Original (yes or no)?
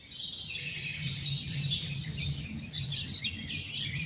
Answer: yes